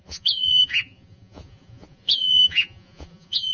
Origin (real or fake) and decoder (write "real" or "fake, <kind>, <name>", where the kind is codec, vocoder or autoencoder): fake, vocoder, Vocos